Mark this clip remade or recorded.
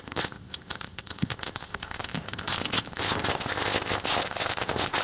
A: remade